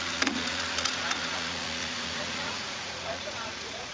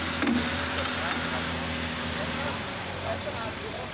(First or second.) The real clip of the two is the second